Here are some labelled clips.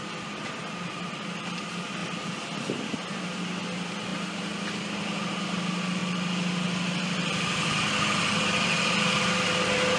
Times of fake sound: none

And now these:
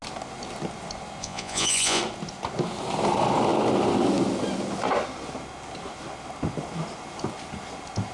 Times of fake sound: 1.2-2.0 (vocoder, Vocos)

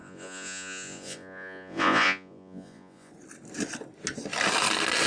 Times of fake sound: 0.0-3.1 (vocoder, Vocos)